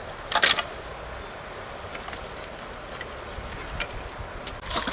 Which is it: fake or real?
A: real